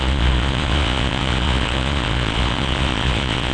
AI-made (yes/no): yes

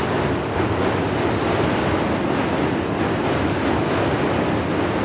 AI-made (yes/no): no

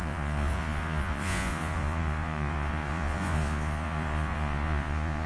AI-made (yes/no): yes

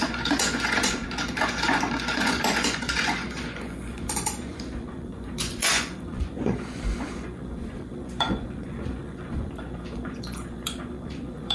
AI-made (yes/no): yes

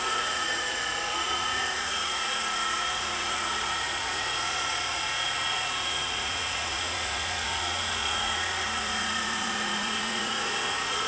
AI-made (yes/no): yes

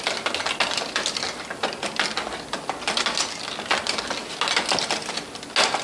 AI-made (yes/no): no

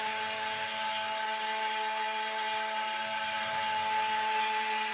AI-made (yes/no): no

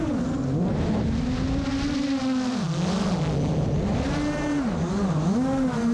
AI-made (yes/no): no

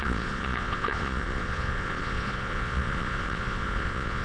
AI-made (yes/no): yes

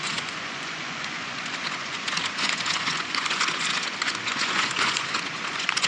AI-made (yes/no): yes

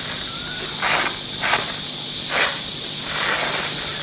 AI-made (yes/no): no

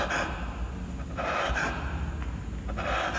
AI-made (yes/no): no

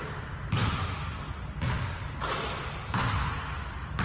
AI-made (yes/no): no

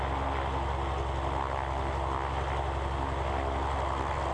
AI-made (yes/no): no